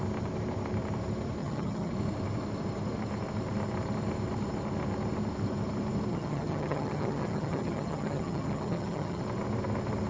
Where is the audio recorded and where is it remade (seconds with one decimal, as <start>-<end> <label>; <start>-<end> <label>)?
0.0-1.4 recorded; 1.4-1.9 remade; 1.9-6.1 recorded; 6.1-9.2 remade; 9.2-10.1 recorded